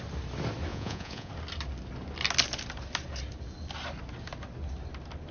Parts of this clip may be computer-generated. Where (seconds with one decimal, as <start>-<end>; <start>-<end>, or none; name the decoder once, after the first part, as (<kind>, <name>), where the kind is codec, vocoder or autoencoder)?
0.7-1.3 (vocoder, Vocos)